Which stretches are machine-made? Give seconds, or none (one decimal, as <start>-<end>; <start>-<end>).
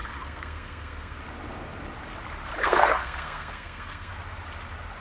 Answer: 0.0-1.2; 2.6-4.1